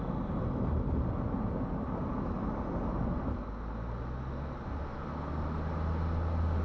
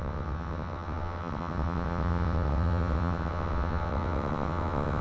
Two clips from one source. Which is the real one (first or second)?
first